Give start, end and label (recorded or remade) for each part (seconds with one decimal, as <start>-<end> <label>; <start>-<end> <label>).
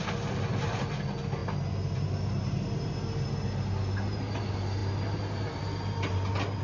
0.0-6.6 recorded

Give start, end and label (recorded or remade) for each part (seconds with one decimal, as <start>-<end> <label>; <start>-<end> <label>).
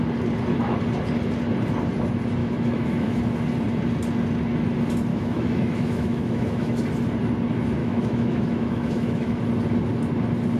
0.0-2.4 recorded; 2.4-3.2 remade; 3.2-5.1 recorded; 5.1-6.8 remade; 6.8-7.8 recorded; 7.8-9.4 remade; 9.4-10.6 recorded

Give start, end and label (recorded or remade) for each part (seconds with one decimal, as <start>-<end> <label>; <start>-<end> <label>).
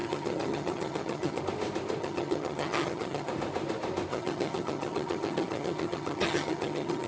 0.0-1.4 remade; 1.4-2.0 recorded; 2.0-3.3 remade; 3.3-4.1 recorded; 4.1-7.1 remade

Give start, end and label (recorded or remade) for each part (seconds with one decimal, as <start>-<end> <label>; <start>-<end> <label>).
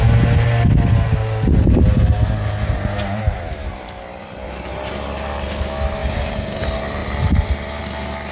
0.0-7.0 recorded; 7.0-7.8 remade; 7.8-8.3 recorded